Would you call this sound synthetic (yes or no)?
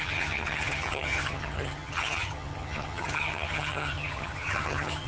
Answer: yes